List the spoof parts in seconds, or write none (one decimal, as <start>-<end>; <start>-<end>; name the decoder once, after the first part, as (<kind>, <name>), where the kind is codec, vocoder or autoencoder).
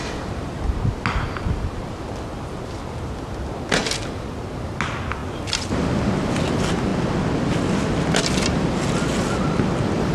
none